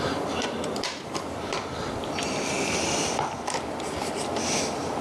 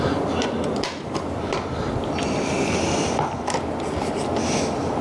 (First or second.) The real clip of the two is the second